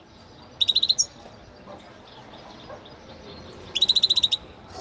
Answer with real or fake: real